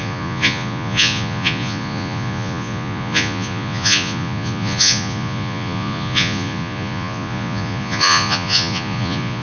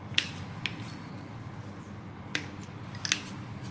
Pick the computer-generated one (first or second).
first